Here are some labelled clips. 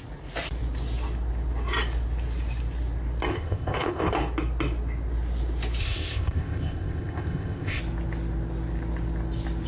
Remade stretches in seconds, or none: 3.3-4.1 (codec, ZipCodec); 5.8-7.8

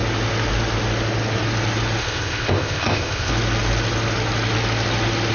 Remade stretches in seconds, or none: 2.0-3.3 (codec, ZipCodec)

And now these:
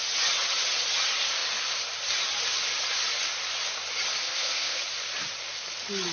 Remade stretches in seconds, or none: 4.2-4.8 (codec, ZipCodec)

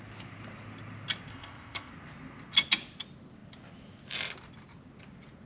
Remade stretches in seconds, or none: 1.3-1.9 (codec, ZipCodec)

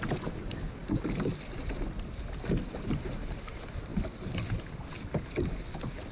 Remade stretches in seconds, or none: none

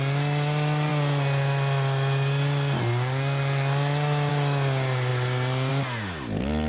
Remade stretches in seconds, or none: none